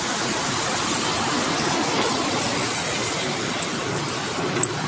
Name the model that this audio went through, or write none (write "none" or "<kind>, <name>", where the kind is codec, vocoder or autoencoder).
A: none